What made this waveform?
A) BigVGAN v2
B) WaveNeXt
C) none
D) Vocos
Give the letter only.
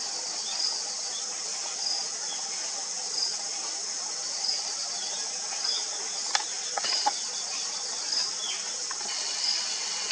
C